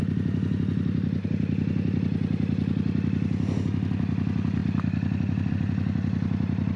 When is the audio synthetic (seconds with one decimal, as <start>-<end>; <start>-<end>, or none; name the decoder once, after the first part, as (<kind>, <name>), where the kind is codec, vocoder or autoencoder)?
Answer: none